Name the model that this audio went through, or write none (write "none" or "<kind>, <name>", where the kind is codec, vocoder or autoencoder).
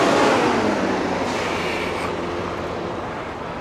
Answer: none